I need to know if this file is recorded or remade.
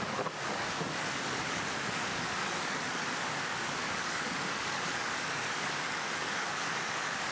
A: remade